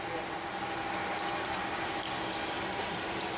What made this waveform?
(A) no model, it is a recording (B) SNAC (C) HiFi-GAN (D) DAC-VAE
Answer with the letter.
A